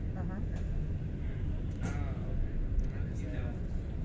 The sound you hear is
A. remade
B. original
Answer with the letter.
B